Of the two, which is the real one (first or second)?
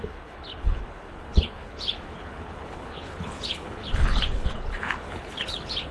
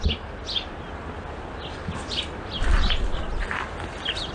second